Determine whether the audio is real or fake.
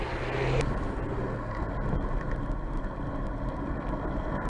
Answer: real